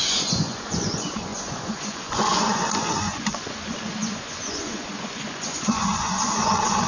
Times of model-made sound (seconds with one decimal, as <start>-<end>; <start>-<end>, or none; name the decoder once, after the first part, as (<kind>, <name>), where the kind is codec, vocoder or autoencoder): 0.0-6.9 (vocoder, Vocos)